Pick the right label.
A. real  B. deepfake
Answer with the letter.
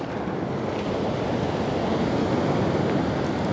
A